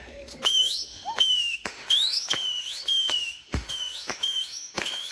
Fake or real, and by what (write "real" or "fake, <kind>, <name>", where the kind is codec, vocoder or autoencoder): fake, autoencoder, DAC-VAE